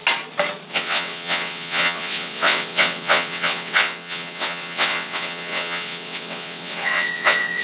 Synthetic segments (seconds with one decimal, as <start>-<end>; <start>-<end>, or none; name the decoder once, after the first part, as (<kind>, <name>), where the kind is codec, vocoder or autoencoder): 0.7-7.6 (vocoder, WaveNeXt)